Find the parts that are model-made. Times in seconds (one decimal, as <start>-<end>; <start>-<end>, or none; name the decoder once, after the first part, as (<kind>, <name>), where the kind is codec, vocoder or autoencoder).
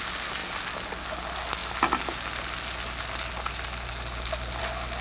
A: none